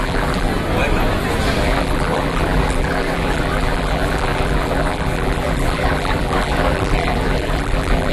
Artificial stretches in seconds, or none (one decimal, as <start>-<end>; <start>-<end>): 0.0-0.5; 1.6-8.1